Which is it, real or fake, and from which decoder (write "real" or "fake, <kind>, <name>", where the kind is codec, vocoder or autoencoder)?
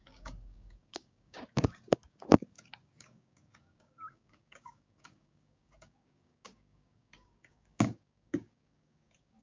fake, codec, DAC